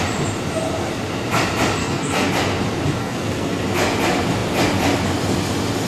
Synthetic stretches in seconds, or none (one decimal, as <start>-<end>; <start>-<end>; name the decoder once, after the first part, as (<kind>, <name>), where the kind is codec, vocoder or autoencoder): 1.8-2.3 (codec, SNAC); 3.0-3.6